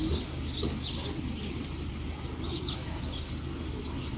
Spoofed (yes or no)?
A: no